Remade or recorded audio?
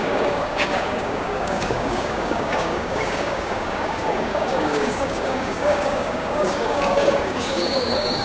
remade